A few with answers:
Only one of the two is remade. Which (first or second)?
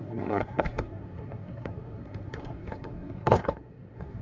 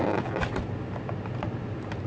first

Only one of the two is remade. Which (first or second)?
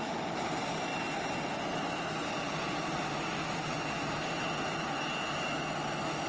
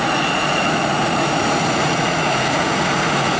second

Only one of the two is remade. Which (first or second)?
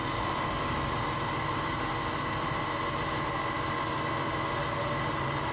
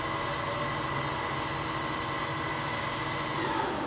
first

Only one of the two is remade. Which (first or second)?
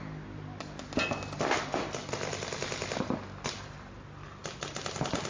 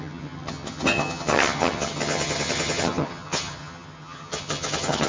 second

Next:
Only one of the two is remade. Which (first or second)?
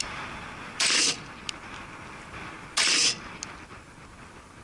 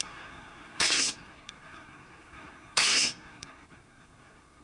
second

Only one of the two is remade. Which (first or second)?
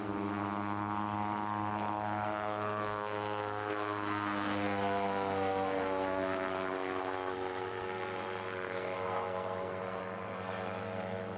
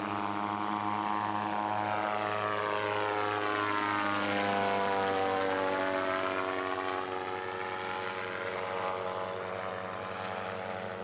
first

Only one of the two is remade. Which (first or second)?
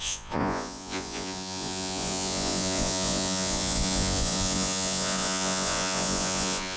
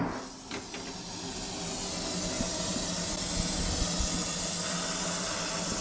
first